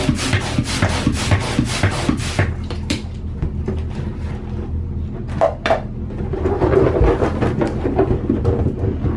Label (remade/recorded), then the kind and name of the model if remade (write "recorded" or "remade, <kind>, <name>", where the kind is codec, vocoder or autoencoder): recorded